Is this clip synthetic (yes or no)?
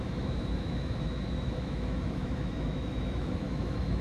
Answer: yes